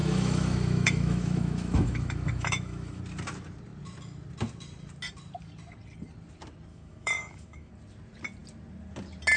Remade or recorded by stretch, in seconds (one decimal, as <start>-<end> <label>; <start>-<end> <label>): 0.0-3.0 remade; 3.0-6.7 recorded; 6.7-7.7 remade; 7.7-9.4 recorded